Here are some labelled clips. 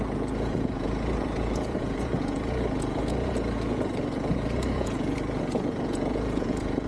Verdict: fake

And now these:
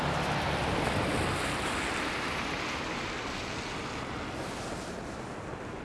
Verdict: real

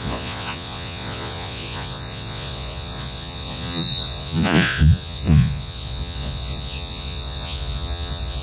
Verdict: fake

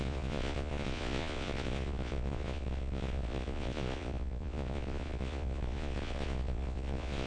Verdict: fake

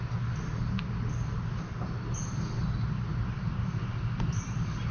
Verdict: real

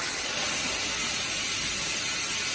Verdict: real